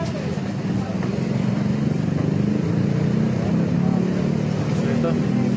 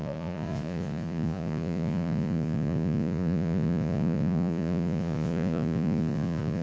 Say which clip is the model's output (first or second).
second